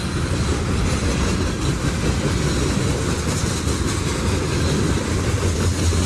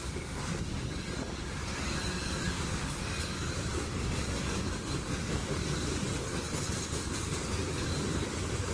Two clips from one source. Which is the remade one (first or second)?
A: second